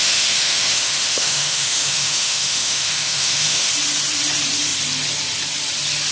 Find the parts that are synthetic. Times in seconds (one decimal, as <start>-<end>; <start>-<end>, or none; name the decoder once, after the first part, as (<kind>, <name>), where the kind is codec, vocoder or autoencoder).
0.0-3.7 (autoencoder, DAC-VAE)